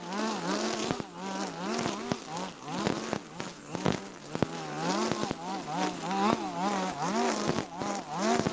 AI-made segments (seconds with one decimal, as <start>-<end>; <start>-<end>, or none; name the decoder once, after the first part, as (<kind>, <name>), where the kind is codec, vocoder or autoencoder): none